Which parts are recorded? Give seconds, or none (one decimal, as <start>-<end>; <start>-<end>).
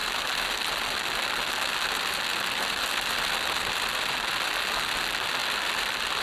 0.0-6.2